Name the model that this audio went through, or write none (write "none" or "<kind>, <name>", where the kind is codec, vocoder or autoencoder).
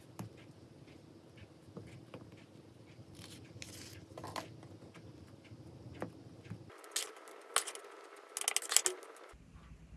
none